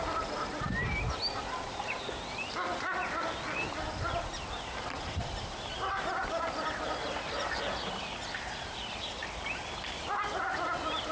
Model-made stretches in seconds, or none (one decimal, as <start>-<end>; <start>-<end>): none